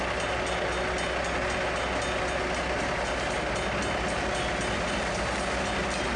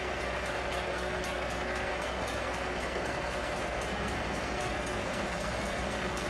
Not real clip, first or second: second